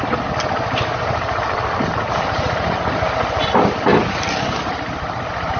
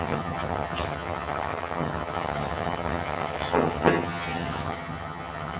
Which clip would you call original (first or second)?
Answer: first